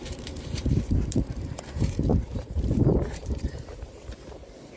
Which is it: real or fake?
fake